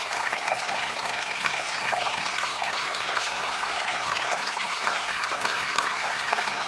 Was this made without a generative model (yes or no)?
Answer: no